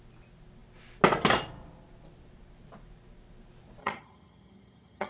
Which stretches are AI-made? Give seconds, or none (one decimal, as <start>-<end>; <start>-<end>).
3.8-5.1